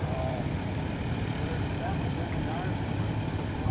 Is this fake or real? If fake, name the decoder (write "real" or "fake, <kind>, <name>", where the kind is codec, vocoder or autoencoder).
fake, vocoder, BigVGAN v2